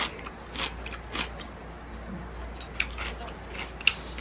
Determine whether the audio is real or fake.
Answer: real